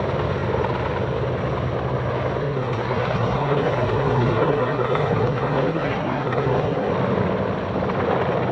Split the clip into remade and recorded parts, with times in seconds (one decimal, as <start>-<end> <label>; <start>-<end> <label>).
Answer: 0.0-2.4 recorded; 2.4-6.9 remade; 6.9-8.5 recorded